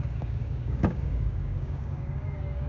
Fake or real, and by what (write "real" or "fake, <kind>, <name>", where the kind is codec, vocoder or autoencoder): fake, codec, DAC